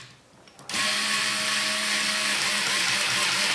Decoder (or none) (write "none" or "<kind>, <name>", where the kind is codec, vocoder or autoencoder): none